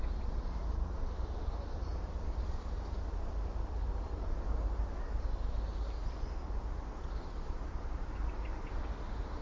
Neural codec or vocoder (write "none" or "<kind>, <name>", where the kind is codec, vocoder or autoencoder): none